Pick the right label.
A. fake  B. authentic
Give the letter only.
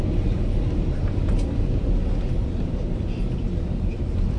B